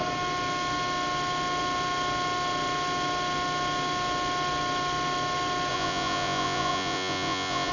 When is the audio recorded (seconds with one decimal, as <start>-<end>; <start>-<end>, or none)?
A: 0.0-5.7